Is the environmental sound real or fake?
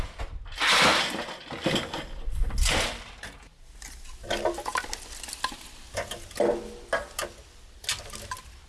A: real